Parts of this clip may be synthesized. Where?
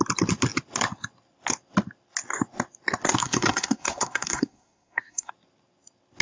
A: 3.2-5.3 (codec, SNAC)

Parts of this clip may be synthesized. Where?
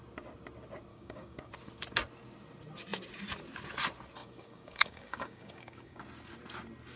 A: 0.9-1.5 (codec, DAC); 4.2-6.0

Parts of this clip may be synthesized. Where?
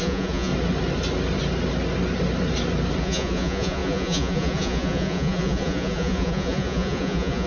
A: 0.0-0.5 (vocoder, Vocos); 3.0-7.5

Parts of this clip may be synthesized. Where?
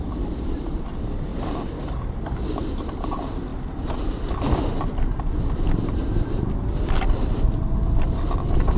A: 0.0-1.3 (vocoder, BigVGAN v2); 2.1-3.5; 5.7-8.8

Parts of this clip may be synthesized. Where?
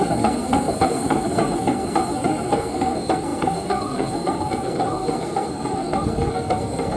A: 0.0-7.0 (codec, SNAC)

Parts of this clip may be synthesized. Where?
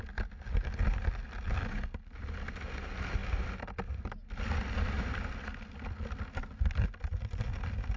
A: none